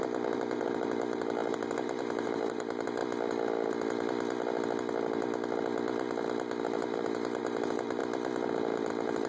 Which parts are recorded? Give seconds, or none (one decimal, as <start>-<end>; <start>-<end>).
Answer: 3.0-6.6; 8.0-8.9